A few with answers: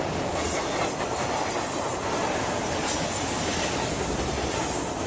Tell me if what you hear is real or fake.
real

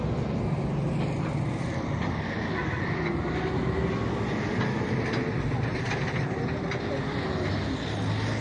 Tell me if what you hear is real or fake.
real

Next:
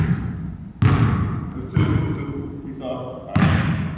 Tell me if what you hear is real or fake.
real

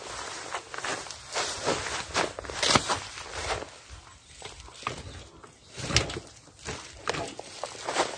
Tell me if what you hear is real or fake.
real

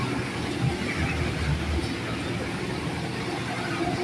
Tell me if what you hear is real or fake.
real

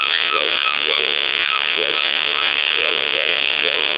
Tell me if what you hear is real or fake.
fake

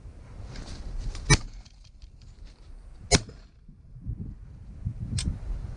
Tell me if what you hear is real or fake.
real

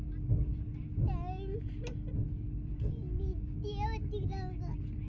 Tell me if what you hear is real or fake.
real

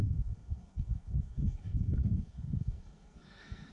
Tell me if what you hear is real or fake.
fake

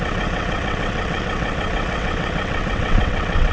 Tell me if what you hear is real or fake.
fake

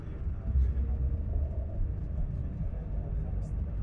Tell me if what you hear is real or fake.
real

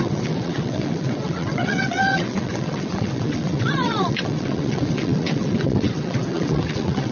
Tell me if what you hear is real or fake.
fake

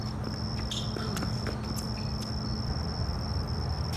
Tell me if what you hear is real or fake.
real